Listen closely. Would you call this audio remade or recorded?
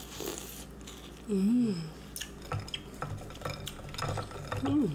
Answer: recorded